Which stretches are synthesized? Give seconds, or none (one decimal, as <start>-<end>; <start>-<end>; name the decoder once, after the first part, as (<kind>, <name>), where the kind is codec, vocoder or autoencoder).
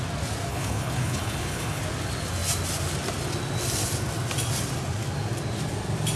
0.5-1.8 (codec, HILCodec)